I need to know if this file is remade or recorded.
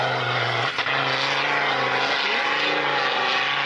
recorded